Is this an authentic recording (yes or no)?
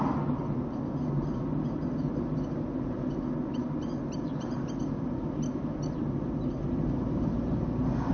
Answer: yes